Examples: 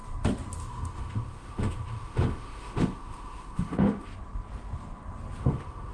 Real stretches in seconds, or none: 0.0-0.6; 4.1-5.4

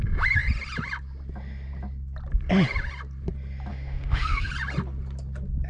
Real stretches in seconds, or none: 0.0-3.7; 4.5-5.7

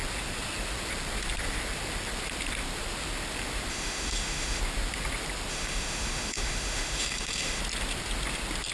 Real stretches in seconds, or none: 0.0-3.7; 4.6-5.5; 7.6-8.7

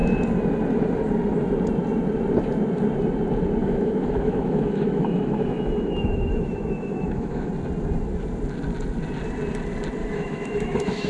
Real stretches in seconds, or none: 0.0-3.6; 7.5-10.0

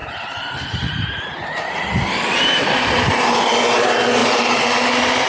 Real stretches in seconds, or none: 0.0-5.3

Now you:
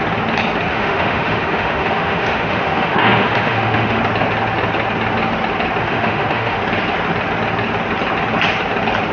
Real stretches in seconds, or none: 0.0-0.7; 4.0-5.8; 6.6-9.1

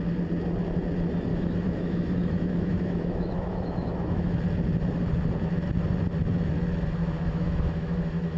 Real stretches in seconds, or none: 0.0-1.3; 4.4-7.0

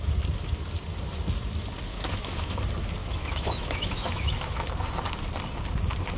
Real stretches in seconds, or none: 0.0-1.9; 2.6-3.0; 4.6-6.2